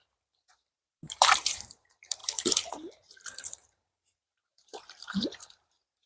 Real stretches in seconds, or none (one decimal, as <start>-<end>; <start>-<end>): none